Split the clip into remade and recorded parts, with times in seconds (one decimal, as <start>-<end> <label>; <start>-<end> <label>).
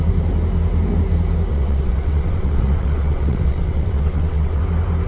0.0-1.5 recorded; 1.5-4.6 remade; 4.6-5.1 recorded